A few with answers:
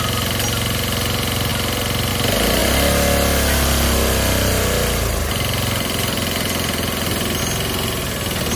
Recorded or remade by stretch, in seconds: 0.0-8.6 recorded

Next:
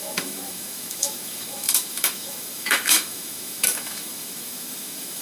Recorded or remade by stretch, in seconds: 0.0-5.2 remade